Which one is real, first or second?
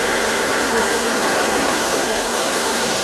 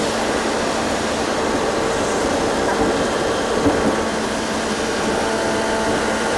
second